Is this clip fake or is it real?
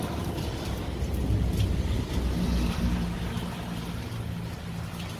real